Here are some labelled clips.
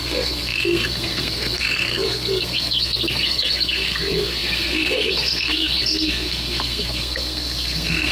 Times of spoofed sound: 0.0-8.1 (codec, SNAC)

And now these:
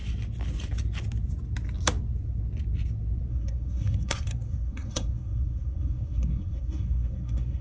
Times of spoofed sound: 3.3-7.6 (codec, SNAC)

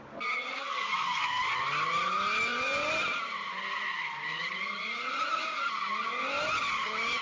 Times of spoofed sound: 0.5-1.4 (codec, SNAC)